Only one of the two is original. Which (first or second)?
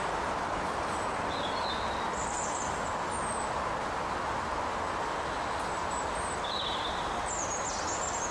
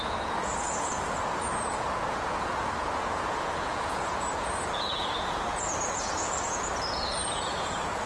first